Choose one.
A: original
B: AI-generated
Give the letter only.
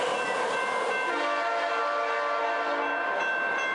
A